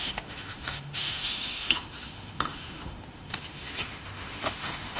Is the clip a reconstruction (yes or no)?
yes